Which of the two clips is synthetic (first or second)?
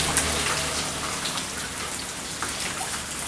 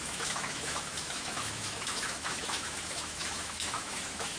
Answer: second